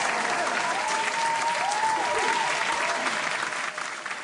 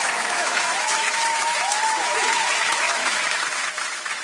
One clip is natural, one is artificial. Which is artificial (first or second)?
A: second